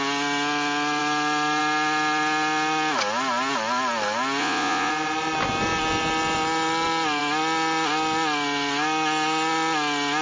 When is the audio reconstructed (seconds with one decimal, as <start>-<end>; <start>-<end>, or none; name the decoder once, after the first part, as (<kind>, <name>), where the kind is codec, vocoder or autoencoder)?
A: 4.4-4.9 (vocoder, Vocos)